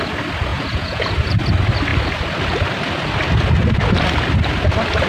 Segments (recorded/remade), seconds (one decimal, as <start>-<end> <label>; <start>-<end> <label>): 0.0-0.5 recorded; 0.5-1.3 remade; 1.3-5.1 recorded